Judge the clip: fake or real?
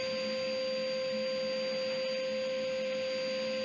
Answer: real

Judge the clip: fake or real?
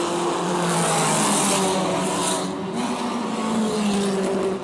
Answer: real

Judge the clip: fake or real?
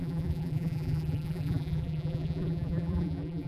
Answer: fake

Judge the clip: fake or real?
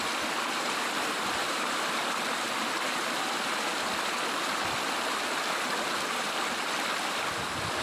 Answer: real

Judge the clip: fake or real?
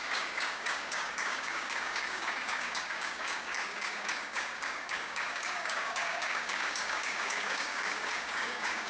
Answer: fake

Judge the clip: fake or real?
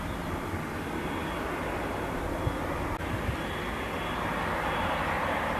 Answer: real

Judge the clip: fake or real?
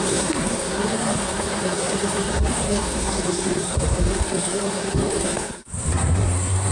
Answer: fake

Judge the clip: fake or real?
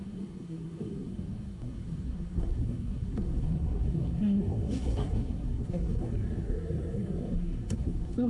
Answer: fake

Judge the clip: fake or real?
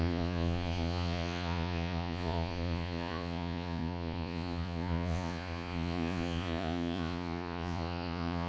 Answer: fake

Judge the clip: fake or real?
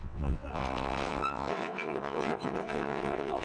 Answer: fake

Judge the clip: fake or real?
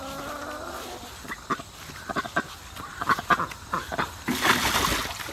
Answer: real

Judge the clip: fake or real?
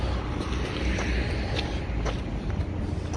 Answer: real